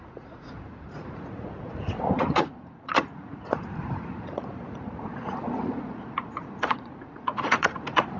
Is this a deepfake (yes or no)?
yes